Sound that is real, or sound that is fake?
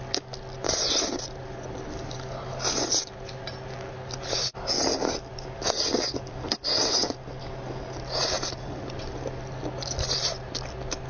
real